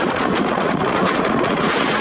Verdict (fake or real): fake